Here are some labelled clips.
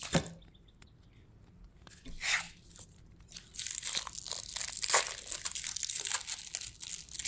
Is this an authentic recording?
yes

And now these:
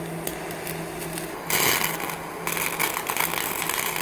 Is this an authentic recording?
yes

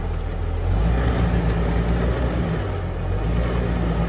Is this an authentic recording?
yes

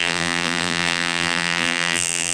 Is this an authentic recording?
no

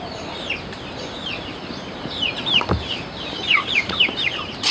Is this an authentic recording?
no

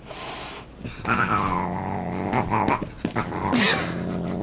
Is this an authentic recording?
yes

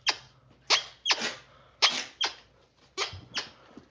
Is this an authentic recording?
yes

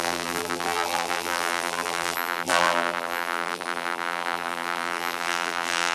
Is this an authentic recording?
no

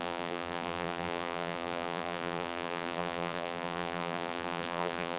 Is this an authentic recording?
no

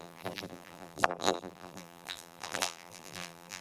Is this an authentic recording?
no